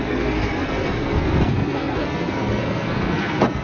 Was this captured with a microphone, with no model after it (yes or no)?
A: no